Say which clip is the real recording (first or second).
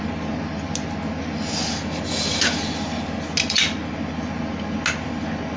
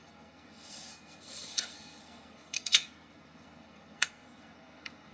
first